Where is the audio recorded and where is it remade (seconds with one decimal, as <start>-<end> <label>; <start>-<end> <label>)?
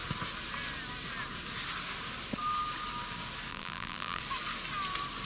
0.0-3.5 recorded; 3.5-4.2 remade; 4.2-5.3 recorded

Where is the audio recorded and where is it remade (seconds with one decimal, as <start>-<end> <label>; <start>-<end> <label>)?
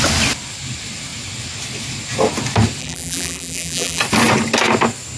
0.0-2.8 recorded; 2.8-4.0 remade; 4.0-5.2 recorded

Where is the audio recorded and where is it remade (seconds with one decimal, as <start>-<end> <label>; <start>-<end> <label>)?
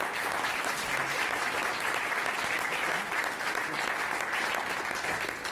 0.0-1.0 recorded; 1.0-1.7 remade; 1.7-5.5 recorded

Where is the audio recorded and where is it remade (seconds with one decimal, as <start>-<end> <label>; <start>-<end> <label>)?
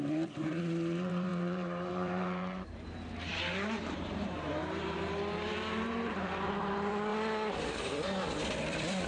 0.0-7.1 remade; 7.1-9.1 recorded